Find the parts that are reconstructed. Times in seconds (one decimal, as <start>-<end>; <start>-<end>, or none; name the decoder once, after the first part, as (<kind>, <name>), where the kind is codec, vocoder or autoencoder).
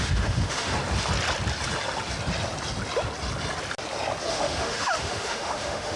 0.0-0.7 (autoencoder, DAC-VAE); 4.3-6.0